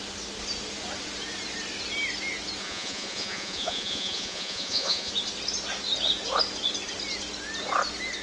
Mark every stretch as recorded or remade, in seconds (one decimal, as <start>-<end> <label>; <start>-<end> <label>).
0.0-2.6 recorded; 2.6-5.1 remade; 5.1-8.2 recorded

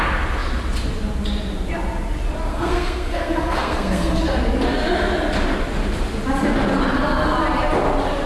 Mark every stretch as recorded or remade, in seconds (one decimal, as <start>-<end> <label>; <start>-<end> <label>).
0.0-2.5 recorded; 2.5-4.2 remade; 4.2-8.3 recorded

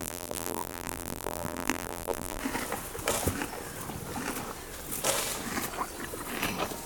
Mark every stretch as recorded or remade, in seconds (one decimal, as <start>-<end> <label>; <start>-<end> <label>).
0.0-2.4 remade; 2.4-6.9 recorded

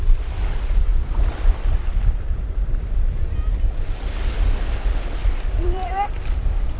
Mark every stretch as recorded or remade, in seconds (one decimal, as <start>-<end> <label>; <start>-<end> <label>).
0.0-5.2 recorded; 5.2-6.8 remade

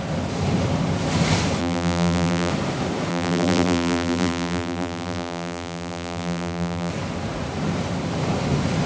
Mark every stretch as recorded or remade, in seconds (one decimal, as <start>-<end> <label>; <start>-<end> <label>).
0.0-1.6 recorded; 1.6-2.5 remade; 2.5-3.1 recorded; 3.1-6.9 remade; 6.9-8.9 recorded

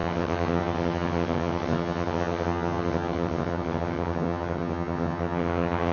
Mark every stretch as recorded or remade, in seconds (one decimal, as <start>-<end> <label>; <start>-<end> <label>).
0.0-5.9 remade

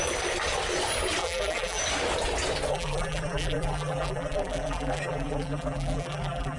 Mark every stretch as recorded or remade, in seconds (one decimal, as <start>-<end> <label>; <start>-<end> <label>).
0.0-1.2 recorded; 1.2-1.8 remade; 1.8-2.7 recorded; 2.7-6.6 remade